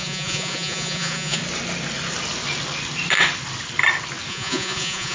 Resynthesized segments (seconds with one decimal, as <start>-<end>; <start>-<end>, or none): 0.0-1.4; 4.3-5.1